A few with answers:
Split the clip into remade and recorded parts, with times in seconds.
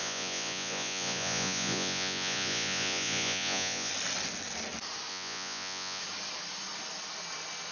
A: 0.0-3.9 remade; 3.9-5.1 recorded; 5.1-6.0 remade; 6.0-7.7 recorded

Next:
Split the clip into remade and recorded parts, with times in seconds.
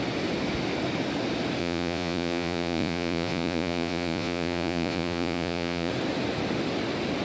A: 0.0-1.6 recorded; 1.6-5.9 remade; 5.9-7.2 recorded